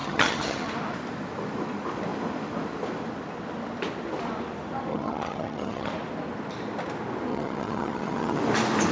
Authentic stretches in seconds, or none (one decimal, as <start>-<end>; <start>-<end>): 0.7-4.9; 5.9-7.3; 8.4-8.9